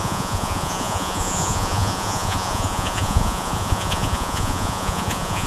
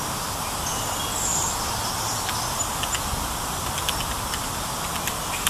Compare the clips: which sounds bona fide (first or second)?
second